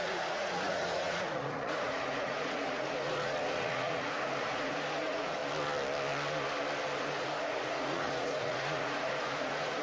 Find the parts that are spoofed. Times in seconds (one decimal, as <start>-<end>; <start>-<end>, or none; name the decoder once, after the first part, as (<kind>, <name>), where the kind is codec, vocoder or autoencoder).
0.0-5.4 (vocoder, Vocos); 7.0-9.8